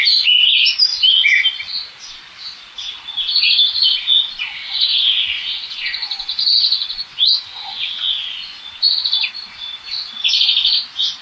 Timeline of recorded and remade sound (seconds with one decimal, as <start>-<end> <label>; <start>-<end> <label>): 0.0-4.9 recorded; 4.9-8.7 remade; 8.7-11.2 recorded